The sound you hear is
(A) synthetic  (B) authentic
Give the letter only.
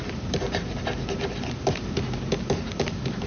B